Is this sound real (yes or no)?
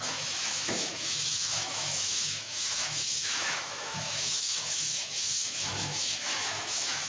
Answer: no